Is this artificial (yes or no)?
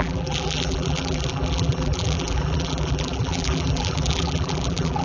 yes